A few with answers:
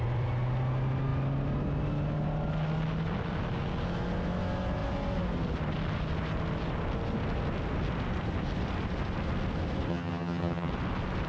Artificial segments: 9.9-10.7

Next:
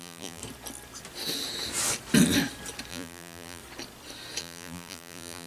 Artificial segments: 0.0-0.4; 2.9-3.6; 4.4-5.5

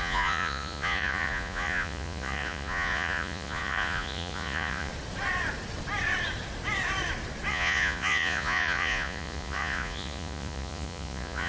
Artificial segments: 0.0-4.9; 7.5-11.5